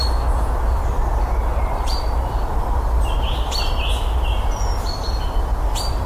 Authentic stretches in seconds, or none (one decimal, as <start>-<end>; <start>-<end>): 0.0-1.5; 2.3-6.1